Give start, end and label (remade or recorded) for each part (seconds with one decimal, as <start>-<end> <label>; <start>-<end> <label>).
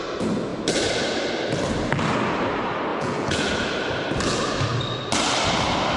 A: 0.0-2.9 recorded; 2.9-3.5 remade; 3.5-6.0 recorded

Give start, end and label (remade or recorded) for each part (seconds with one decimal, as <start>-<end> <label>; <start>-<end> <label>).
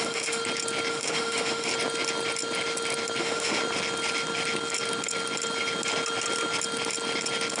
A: 0.0-0.4 remade; 0.4-0.9 recorded; 0.9-1.7 remade; 1.7-3.2 recorded; 3.2-3.6 remade; 3.6-7.6 recorded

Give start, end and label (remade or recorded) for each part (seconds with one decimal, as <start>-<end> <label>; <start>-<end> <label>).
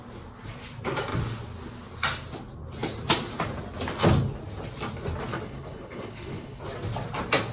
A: 0.0-5.3 recorded; 5.3-6.6 remade; 6.6-7.5 recorded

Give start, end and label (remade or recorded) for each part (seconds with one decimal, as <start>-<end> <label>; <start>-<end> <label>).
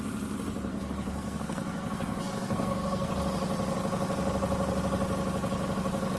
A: 0.0-0.7 recorded; 0.7-3.1 remade; 3.1-6.2 recorded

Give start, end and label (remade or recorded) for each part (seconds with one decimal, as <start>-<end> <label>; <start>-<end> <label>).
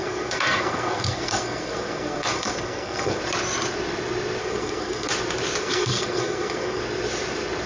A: 0.0-3.2 remade; 3.2-4.4 recorded; 4.4-5.1 remade; 5.1-5.6 recorded; 5.6-6.8 remade; 6.8-7.7 recorded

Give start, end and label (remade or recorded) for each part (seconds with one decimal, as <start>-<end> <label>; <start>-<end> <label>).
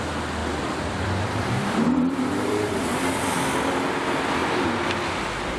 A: 0.0-0.4 recorded; 0.4-3.8 remade; 3.8-5.6 recorded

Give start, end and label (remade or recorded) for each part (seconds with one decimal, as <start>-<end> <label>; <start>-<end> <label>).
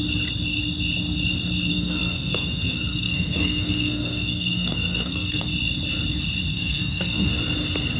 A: 0.0-1.7 recorded; 1.7-5.5 remade; 5.5-6.5 recorded; 6.5-7.3 remade; 7.3-8.0 recorded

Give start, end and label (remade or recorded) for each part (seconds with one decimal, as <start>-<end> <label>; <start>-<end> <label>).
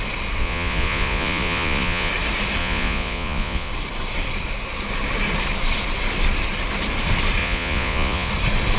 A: 0.0-0.4 recorded; 0.4-2.1 remade; 2.1-2.6 recorded; 2.6-3.7 remade; 3.7-7.4 recorded; 7.4-8.3 remade; 8.3-8.8 recorded